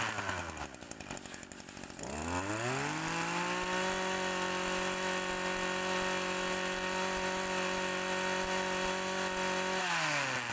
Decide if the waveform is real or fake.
real